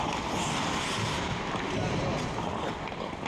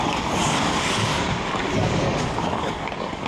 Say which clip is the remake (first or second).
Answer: second